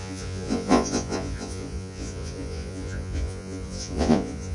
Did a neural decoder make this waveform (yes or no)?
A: yes